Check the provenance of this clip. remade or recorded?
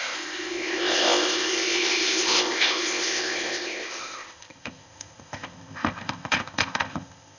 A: remade